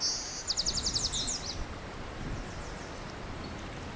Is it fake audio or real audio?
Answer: real